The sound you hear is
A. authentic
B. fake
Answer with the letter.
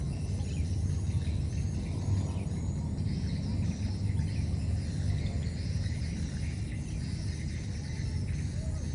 A